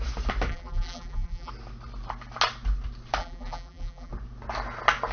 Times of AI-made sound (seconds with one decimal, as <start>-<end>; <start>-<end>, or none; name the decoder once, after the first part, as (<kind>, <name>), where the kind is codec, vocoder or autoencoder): 0.5-1.5 (vocoder, BigVGAN v2); 3.2-4.1